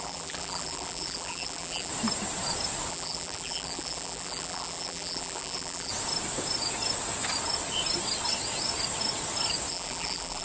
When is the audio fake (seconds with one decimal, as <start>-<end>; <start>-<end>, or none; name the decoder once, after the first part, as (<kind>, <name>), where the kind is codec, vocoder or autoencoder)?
0.0-1.9 (vocoder, BigVGAN v2); 2.9-5.9; 9.7-10.4